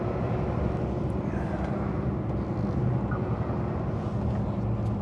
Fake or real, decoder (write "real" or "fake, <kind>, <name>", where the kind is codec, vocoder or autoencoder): real